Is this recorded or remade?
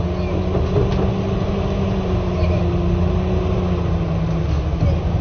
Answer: recorded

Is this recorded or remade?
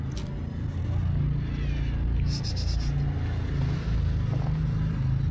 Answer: recorded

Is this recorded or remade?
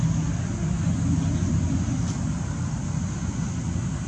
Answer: recorded